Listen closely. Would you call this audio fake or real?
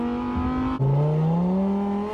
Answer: real